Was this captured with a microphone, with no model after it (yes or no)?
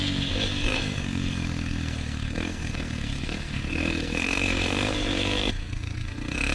no